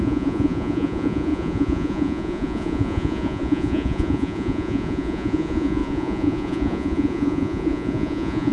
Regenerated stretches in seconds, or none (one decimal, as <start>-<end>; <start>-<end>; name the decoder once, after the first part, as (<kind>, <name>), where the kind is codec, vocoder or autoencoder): 0.0-8.5 (vocoder, Vocos)